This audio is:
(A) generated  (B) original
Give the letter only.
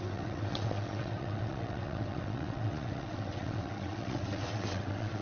A